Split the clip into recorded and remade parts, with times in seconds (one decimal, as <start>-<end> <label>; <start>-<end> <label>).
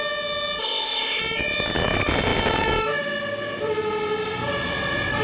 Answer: 0.0-0.6 recorded; 0.6-1.2 remade; 1.2-5.2 recorded